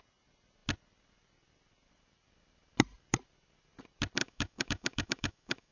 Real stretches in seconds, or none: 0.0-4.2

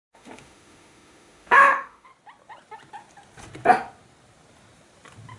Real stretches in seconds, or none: 2.1-5.4

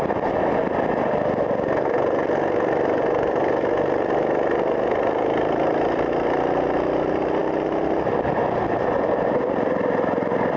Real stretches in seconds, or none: 0.0-10.6

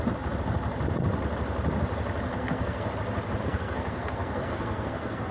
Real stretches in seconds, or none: 0.0-2.3; 2.9-3.4